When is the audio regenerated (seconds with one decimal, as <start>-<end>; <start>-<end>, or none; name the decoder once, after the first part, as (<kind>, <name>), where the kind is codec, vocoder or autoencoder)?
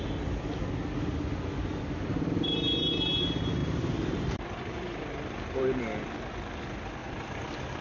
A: 2.1-2.9 (vocoder, BigVGAN v2); 3.6-5.8; 7.0-7.8